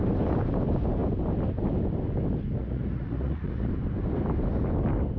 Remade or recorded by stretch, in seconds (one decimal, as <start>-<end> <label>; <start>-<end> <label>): 0.0-2.6 recorded; 2.6-3.7 remade; 3.7-5.2 recorded